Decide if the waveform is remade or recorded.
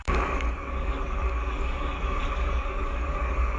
remade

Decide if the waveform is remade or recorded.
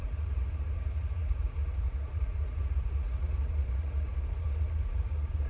remade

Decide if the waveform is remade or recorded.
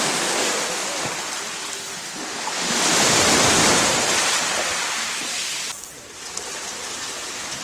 recorded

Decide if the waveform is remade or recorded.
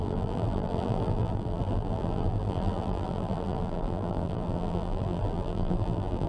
remade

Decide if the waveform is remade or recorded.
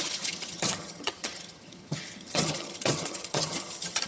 remade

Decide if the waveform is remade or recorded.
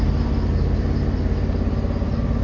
recorded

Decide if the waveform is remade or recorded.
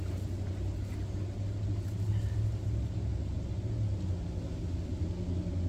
recorded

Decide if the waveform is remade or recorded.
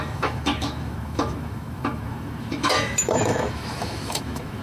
remade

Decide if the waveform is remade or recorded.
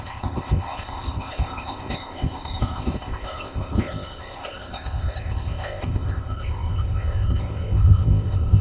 remade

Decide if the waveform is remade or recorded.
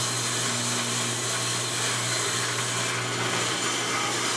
recorded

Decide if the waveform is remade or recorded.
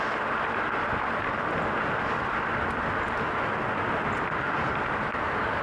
recorded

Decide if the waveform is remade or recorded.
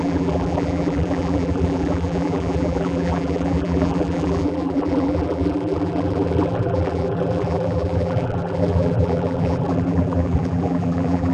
remade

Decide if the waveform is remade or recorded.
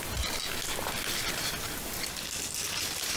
recorded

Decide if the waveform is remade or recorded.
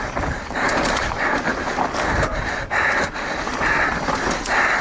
recorded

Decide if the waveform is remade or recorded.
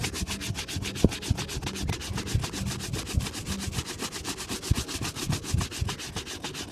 recorded